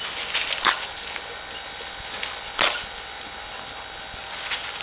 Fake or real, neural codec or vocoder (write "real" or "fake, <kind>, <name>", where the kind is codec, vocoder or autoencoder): real